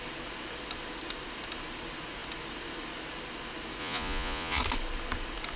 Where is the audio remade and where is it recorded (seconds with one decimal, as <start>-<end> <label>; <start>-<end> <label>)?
0.0-3.8 recorded; 3.8-4.6 remade; 4.6-5.6 recorded